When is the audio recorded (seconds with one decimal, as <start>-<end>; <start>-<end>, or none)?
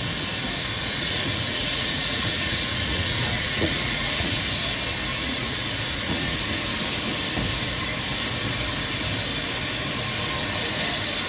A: 0.0-0.8; 4.4-5.1; 6.4-11.3